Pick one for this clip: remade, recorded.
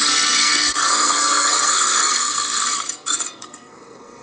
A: remade